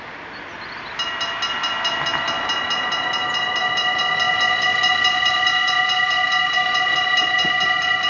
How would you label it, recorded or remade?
recorded